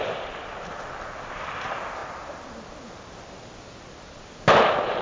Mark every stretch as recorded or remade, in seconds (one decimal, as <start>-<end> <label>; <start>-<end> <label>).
0.0-5.0 recorded